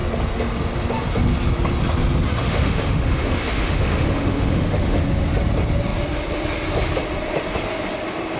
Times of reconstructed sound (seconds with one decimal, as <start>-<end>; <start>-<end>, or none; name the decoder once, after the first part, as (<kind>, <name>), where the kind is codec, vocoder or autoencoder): 2.4-5.0 (autoencoder, DAC-VAE)